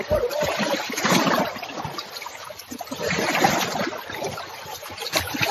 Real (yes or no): yes